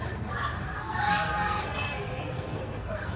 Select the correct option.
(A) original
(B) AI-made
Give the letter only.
B